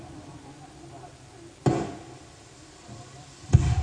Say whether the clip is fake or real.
real